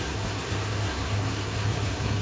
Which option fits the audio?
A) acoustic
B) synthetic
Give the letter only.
B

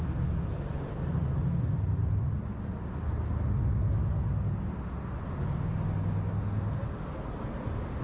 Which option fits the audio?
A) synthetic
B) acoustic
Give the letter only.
B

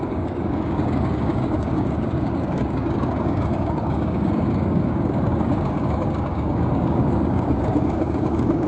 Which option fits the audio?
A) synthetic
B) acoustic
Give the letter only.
A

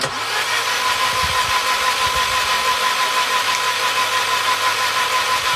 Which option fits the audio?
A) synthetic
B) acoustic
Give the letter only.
B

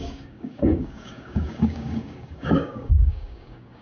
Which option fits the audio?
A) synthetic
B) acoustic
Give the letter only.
A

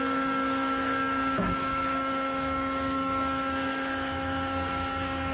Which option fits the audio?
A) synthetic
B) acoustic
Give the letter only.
A